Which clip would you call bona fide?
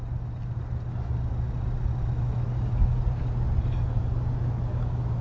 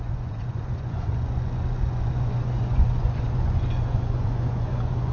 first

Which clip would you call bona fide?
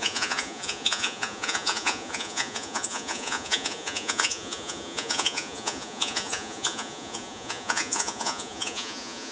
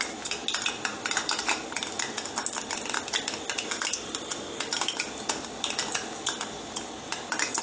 second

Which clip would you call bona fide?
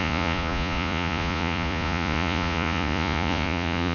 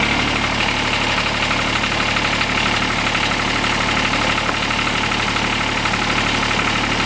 second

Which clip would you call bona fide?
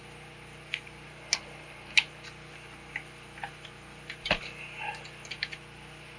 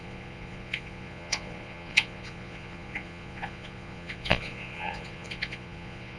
first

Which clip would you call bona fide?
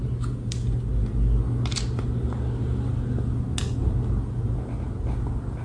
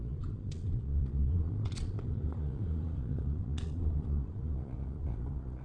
first